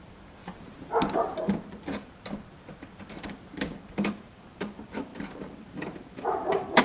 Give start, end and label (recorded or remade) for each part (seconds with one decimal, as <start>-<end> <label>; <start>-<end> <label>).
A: 0.0-6.8 remade